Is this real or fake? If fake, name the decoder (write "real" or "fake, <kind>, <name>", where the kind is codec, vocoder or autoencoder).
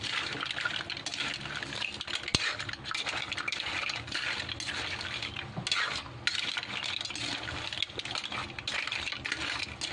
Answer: real